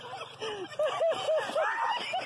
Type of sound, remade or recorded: recorded